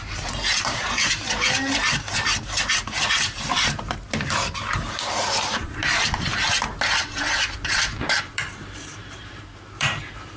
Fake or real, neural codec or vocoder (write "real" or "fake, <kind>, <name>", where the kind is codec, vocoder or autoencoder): fake, vocoder, BigVGAN v2